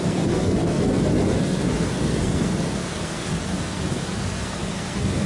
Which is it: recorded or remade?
remade